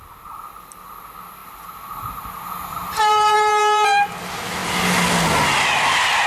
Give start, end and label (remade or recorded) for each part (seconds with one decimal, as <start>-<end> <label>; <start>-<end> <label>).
0.0-1.4 recorded; 1.4-4.1 remade; 4.1-6.3 recorded